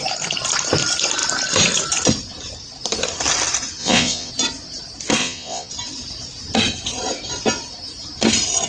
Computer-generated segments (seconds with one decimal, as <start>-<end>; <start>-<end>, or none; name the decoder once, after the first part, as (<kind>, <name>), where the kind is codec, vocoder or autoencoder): 3.8-4.3 (vocoder, Vocos); 5.2-5.7

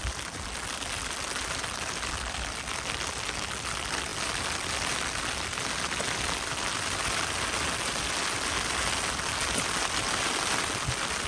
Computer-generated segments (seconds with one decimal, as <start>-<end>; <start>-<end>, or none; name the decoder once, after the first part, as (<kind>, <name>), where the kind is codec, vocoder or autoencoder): none

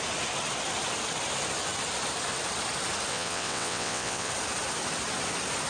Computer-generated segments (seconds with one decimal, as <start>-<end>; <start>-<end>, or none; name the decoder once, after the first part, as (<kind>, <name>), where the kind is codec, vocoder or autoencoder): 3.1-4.3 (vocoder, WaveNeXt)

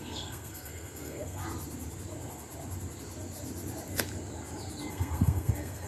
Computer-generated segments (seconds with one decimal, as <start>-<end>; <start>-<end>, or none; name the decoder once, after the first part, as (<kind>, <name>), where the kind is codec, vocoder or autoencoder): 0.0-1.4 (codec, SNAC); 4.9-5.9

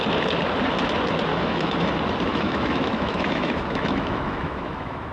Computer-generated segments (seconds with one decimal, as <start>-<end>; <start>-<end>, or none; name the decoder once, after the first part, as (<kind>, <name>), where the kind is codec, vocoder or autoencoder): 1.3-1.9 (autoencoder, DAC-VAE); 2.3-5.1

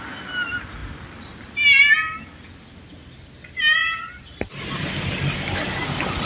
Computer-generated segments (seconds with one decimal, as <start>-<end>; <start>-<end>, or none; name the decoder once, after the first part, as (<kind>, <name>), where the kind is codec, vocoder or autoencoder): 3.8-4.9 (vocoder, BigVGAN v2)

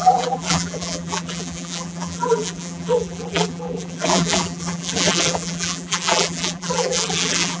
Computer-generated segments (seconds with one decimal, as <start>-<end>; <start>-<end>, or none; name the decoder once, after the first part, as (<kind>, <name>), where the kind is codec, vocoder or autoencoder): 0.0-7.6 (vocoder, BigVGAN v2)

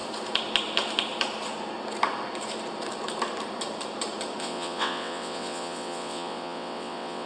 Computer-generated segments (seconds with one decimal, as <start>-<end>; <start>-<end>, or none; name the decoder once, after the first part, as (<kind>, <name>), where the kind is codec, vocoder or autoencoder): 4.4-7.3 (vocoder, WaveNeXt)